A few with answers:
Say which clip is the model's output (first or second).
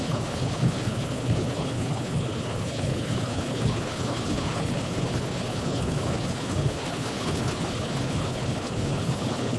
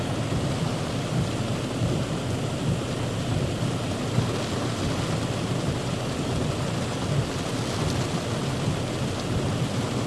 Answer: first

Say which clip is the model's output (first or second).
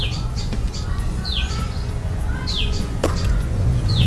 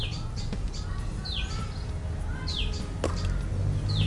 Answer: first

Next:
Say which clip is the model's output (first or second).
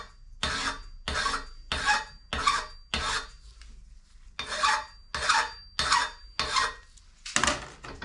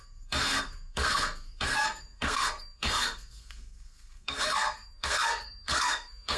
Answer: second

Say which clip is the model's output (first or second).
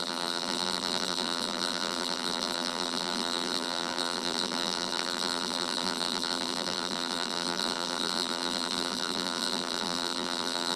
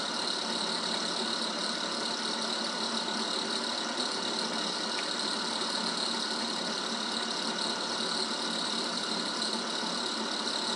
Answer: first